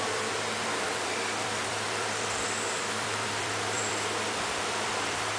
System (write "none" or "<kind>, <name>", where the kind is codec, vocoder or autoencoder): vocoder, BigVGAN v2